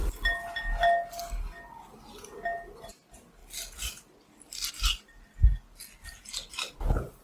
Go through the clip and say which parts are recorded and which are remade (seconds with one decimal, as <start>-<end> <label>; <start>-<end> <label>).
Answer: 0.0-7.2 recorded